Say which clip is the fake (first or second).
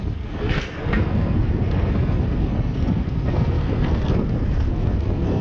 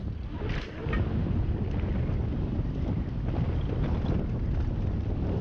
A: first